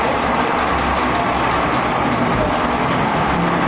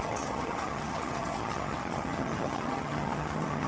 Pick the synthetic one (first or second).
second